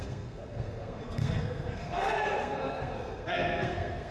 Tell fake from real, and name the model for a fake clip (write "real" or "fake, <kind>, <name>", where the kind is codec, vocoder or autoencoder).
fake, codec, SNAC